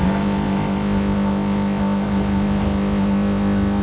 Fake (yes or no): yes